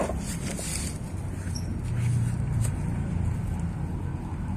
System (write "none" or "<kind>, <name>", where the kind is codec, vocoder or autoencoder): none